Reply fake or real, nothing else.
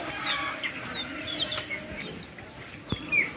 real